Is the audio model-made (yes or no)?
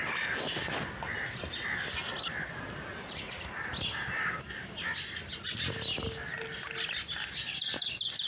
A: no